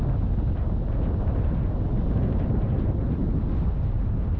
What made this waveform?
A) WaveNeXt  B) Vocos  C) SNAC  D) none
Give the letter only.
D